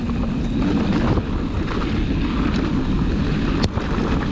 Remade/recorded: recorded